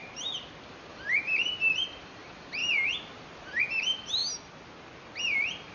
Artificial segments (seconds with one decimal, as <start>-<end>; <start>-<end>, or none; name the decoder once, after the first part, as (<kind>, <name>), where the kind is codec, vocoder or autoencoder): 0.6-2.6 (vocoder, BigVGAN v2); 3.6-4.2; 5.2-5.7